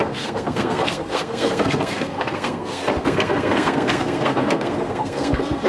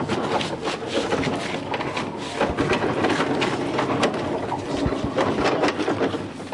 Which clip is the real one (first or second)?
second